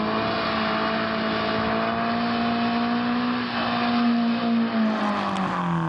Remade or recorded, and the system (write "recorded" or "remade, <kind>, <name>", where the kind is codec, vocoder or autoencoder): recorded